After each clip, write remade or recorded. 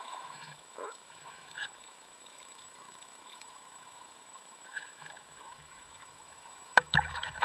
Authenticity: remade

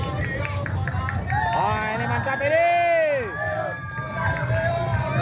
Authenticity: recorded